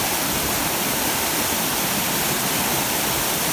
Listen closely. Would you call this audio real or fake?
real